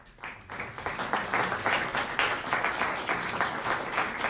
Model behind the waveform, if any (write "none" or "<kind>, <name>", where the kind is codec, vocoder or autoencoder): none